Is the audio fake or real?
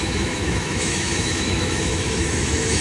fake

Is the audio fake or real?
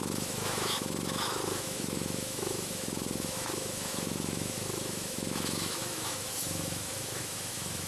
fake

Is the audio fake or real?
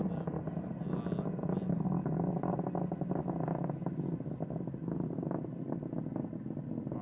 real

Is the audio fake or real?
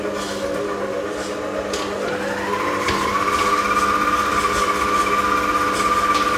real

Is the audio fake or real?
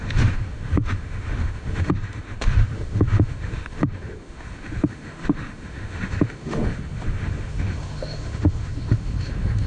fake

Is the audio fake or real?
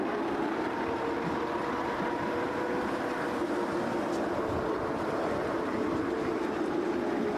real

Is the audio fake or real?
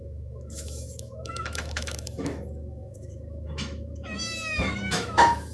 fake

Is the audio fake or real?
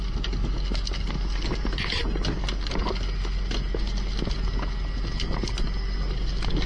real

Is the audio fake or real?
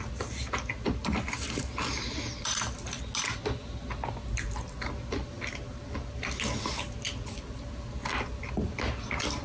real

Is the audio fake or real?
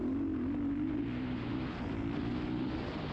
real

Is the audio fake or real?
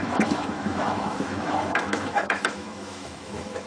fake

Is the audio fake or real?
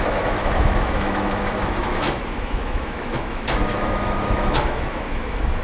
fake